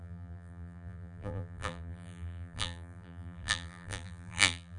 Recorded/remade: remade